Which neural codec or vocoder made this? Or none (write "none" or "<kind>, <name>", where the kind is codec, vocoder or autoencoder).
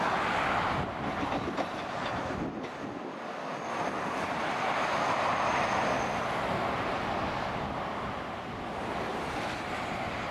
none